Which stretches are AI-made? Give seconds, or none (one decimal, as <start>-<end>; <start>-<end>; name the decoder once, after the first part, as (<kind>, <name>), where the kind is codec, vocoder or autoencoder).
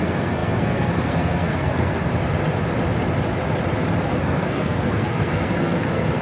0.0-2.0 (codec, SNAC); 4.1-6.2